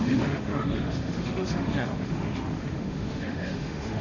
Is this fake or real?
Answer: fake